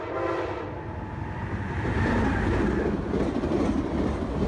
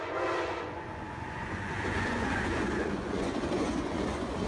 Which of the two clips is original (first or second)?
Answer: first